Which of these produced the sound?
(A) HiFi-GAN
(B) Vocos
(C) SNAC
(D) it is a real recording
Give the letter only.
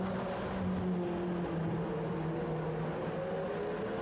D